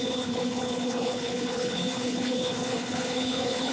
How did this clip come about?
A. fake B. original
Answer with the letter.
A